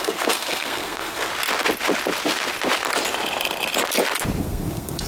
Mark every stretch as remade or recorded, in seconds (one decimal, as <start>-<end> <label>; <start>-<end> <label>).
0.0-1.3 remade; 1.3-4.4 recorded; 4.4-5.1 remade